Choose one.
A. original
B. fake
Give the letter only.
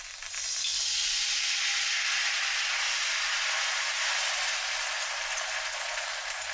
A